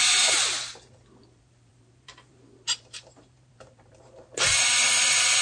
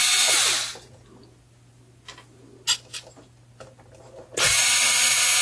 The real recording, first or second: second